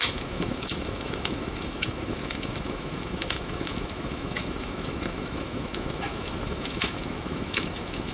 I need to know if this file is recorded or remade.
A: remade